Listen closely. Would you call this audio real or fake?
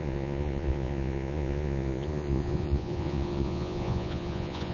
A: fake